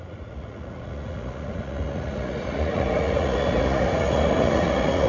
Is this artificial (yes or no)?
yes